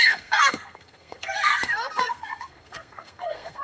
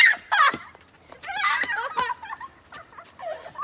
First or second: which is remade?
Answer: first